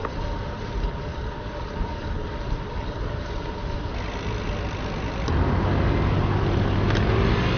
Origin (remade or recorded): recorded